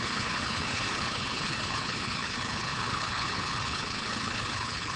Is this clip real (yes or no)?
no